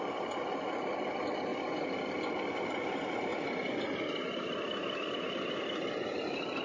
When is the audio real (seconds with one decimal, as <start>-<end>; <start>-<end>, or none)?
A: 0.0-3.3